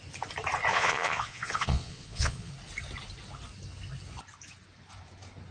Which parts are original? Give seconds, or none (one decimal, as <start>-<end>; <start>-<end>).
0.0-0.7; 2.5-5.5